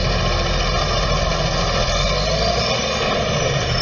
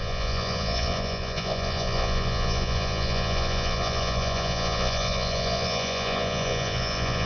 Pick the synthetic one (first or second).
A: second